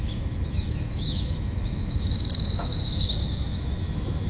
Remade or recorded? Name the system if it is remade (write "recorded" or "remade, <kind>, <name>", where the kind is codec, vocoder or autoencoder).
remade, autoencoder, DAC-VAE